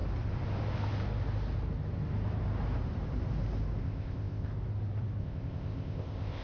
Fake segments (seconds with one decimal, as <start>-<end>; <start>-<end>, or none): 3.8-4.5; 5.2-6.4